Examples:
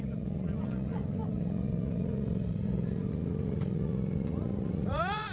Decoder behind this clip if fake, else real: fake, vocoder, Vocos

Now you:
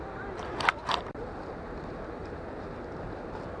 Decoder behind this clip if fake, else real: real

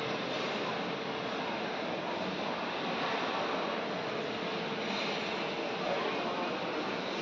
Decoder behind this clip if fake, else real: real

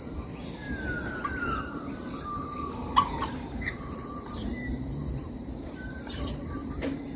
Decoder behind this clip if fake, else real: fake, vocoder, BigVGAN v2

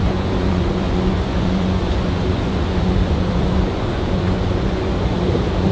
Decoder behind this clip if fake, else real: fake, vocoder, Vocos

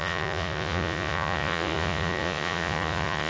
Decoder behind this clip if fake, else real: fake, vocoder, Vocos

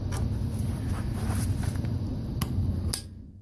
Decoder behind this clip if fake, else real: real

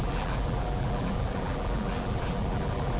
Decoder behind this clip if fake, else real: fake, vocoder, BigVGAN v2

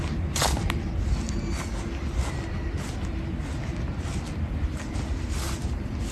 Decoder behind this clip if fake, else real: real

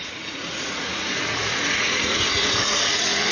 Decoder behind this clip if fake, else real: fake, vocoder, Vocos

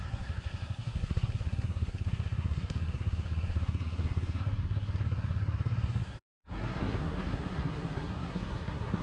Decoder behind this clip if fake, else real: fake, codec, SNAC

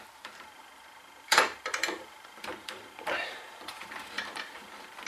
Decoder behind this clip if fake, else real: fake, vocoder, BigVGAN v2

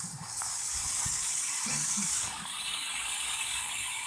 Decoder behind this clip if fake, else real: fake, codec, DAC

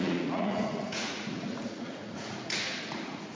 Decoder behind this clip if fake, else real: fake, vocoder, Vocos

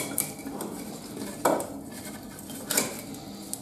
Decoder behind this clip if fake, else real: real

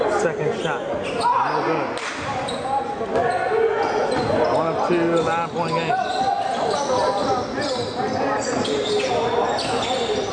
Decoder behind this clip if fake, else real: real